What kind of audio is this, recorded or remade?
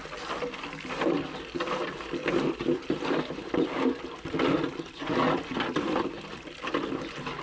recorded